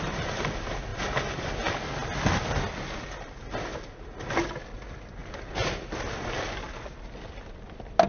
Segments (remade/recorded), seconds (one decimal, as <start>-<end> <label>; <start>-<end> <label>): 0.0-0.9 remade; 0.9-4.3 recorded; 4.3-5.2 remade; 5.2-6.7 recorded; 6.7-8.1 remade